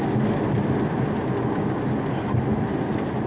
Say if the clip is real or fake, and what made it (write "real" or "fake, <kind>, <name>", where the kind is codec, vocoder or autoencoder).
real